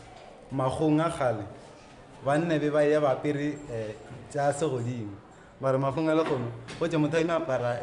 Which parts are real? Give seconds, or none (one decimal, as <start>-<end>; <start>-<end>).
0.0-5.5; 6.3-7.2